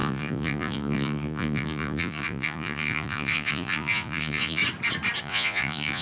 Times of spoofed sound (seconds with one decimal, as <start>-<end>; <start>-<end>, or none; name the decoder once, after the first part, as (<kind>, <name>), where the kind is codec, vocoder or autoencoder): 0.0-4.6 (vocoder, Vocos); 5.2-6.0